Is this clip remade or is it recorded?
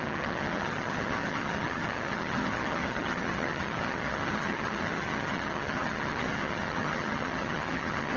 remade